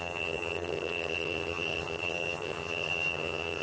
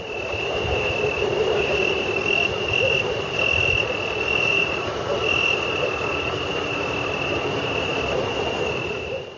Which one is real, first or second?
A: second